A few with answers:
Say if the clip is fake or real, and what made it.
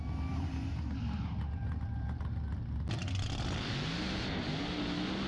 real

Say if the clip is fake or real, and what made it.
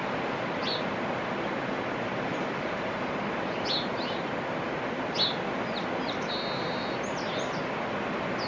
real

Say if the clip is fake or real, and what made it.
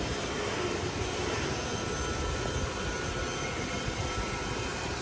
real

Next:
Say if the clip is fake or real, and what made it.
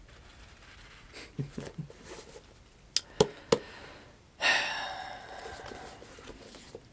real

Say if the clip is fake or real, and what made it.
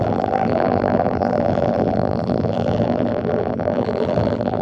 fake, vocoder, BigVGAN v2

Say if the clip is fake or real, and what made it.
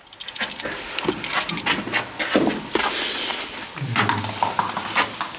real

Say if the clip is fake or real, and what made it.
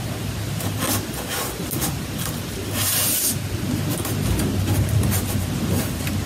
real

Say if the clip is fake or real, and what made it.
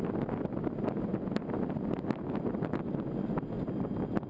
real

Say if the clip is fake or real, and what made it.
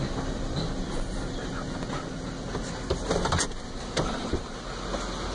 real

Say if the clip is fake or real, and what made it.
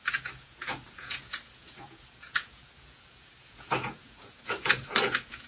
fake, vocoder, Vocos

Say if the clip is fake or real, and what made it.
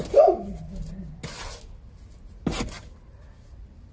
real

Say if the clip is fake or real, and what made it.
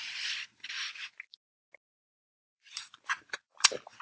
fake, vocoder, BigVGAN v2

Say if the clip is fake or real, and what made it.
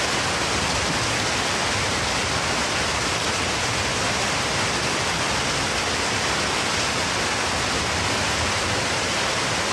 real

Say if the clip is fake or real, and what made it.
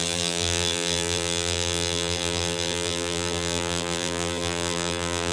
fake, vocoder, BigVGAN v2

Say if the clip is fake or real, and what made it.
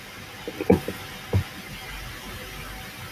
real